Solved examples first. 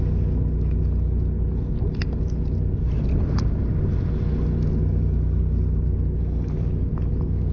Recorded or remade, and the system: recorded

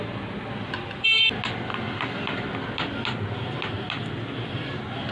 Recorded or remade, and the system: recorded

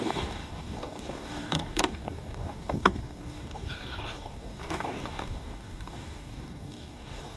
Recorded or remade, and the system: remade, codec, DAC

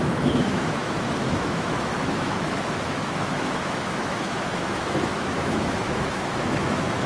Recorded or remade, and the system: remade, autoencoder, DAC-VAE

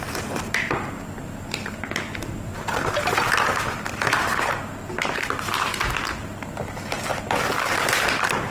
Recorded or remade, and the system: recorded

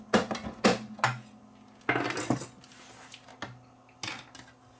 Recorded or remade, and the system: recorded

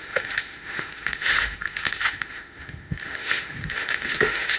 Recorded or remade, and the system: remade, autoencoder, DAC-VAE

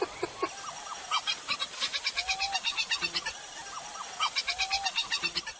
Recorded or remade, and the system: recorded